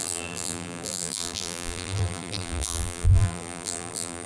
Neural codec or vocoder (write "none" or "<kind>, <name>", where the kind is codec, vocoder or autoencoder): vocoder, BigVGAN v2